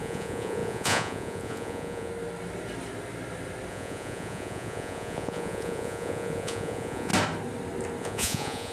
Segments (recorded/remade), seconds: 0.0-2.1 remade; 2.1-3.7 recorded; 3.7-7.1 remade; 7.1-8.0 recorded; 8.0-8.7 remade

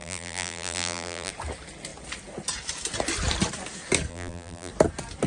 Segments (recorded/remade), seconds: 0.0-1.3 remade; 1.3-4.1 recorded; 4.1-4.7 remade; 4.7-5.3 recorded

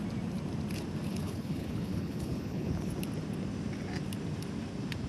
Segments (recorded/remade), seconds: 0.0-1.1 recorded; 1.1-2.9 remade; 2.9-5.1 recorded

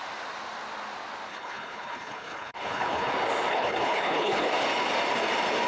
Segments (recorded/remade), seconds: 0.0-1.3 recorded; 1.3-3.1 remade; 3.1-3.5 recorded; 3.5-4.5 remade; 4.5-5.7 recorded

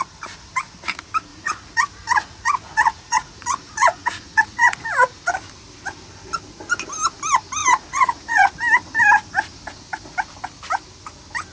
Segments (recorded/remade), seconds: 0.0-1.3 recorded; 1.3-5.3 remade; 5.3-7.6 recorded; 7.6-8.5 remade; 8.5-11.5 recorded